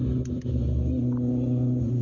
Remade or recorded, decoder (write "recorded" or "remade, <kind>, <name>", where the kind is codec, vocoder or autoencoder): recorded